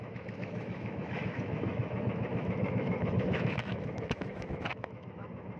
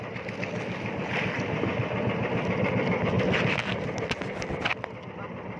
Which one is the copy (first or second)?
first